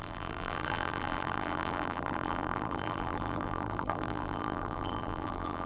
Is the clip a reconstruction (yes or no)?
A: yes